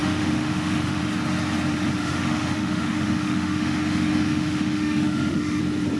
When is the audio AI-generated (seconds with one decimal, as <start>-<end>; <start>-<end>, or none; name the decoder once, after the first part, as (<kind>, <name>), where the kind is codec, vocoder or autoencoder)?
0.0-1.0 (autoencoder, DAC-VAE); 2.0-5.6